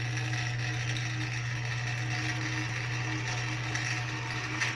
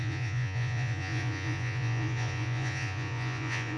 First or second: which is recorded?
first